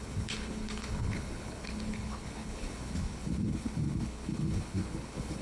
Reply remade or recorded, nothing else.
remade